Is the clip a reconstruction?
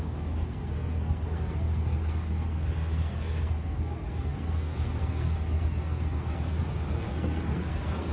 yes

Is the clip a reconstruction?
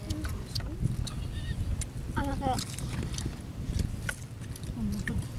no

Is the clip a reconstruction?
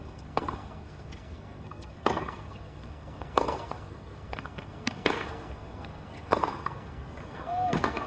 yes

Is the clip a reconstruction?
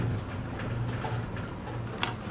no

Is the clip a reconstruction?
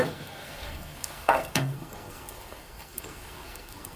yes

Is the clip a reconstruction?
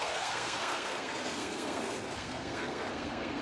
yes